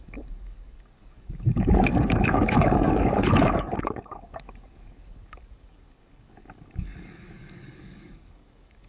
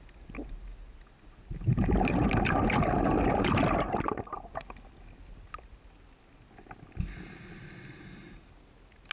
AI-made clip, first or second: first